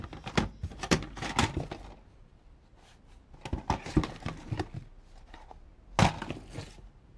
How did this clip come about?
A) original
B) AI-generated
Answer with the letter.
A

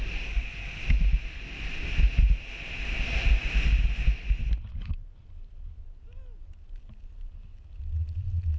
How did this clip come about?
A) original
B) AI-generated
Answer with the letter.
A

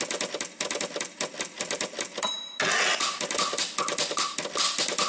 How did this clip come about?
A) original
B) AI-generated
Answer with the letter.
A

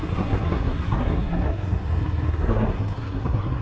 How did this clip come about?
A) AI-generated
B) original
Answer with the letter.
A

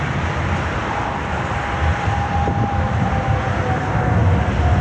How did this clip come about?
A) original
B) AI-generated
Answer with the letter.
A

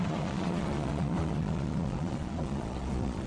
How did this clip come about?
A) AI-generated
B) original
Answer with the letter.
A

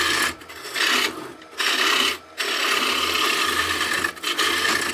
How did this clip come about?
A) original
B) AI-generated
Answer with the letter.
A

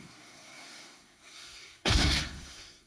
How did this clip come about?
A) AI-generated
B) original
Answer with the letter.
A